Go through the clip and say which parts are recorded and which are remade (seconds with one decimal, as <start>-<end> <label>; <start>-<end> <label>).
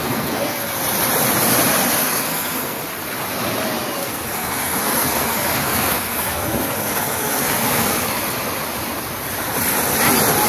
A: 0.0-0.7 remade; 0.7-2.0 recorded; 2.0-2.8 remade; 2.8-4.0 recorded; 4.0-8.1 remade; 8.1-10.5 recorded